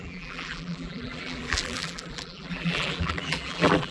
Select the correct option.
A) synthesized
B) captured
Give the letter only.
A